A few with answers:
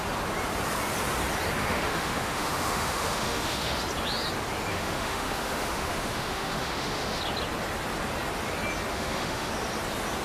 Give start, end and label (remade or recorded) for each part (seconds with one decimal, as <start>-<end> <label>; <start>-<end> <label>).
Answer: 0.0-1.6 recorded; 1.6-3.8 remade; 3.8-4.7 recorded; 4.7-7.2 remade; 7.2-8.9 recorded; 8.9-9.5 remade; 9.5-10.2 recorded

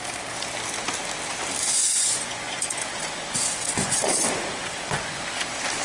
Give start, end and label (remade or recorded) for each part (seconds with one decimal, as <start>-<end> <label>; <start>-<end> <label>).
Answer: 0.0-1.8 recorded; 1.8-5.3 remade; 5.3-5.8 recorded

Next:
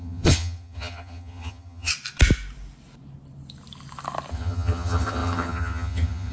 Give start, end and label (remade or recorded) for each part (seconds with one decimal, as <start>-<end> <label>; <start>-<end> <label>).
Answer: 0.0-1.9 remade; 1.9-4.3 recorded; 4.3-6.3 remade

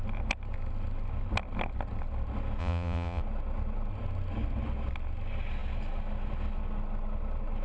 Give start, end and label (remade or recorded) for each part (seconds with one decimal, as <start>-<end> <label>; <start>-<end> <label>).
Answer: 0.0-2.6 recorded; 2.6-3.2 remade; 3.2-7.6 recorded

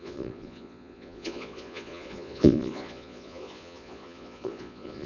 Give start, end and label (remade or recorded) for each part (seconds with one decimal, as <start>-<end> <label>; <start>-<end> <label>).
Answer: 0.0-5.1 remade

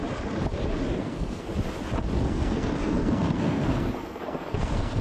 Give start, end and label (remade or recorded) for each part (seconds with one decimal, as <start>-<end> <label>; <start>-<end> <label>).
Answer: 0.0-1.0 recorded; 1.0-1.5 remade; 1.5-2.2 recorded; 2.2-5.0 remade

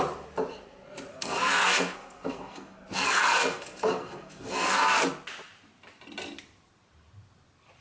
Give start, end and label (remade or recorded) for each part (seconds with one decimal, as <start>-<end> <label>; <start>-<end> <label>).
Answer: 0.0-1.1 recorded; 1.1-5.0 remade; 5.0-7.8 recorded